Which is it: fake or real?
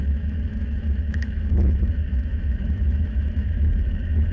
fake